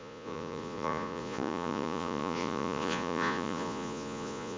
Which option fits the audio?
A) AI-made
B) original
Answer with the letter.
A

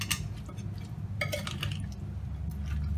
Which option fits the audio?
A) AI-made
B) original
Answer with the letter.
B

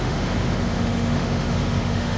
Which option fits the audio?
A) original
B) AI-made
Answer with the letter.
B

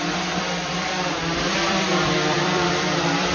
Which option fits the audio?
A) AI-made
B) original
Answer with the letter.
A